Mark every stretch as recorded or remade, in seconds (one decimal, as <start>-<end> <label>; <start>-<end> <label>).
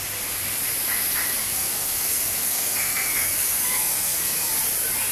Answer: 0.0-1.4 recorded; 1.4-4.5 remade; 4.5-5.1 recorded